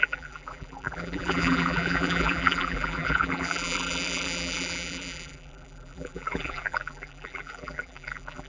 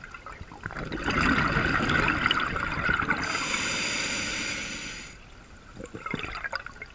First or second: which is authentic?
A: second